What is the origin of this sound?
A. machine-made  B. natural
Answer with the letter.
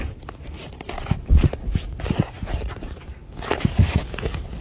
B